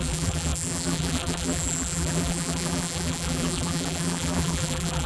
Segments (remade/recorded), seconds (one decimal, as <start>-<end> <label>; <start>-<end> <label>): 0.0-5.1 remade